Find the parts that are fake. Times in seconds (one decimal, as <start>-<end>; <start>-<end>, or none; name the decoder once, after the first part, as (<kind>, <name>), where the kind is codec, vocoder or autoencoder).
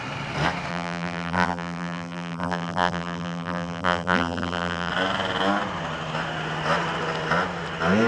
0.7-4.9 (vocoder, BigVGAN v2)